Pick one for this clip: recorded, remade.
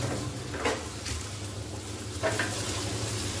recorded